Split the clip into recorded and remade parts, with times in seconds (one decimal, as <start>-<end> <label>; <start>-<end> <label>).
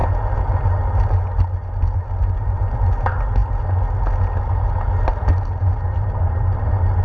0.0-7.0 recorded